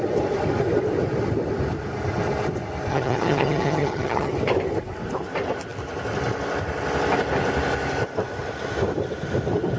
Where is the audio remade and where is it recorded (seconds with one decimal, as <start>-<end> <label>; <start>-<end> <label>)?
0.0-2.9 recorded; 2.9-4.3 remade; 4.3-9.8 recorded